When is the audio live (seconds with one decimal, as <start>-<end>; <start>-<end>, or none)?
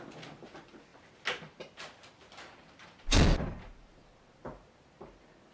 0.0-5.5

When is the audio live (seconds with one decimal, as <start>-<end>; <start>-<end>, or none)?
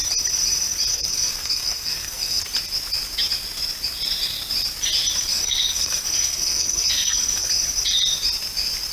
0.0-0.9; 2.4-5.3; 7.5-8.9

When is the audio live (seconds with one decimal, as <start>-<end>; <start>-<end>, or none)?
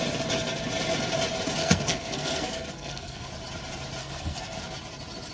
0.0-1.6; 3.3-4.0; 4.6-5.3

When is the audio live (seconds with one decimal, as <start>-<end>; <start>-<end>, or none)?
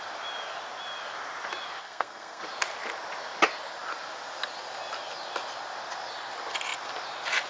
0.0-1.8; 2.4-7.5